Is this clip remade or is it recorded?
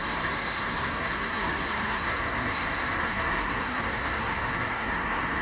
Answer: remade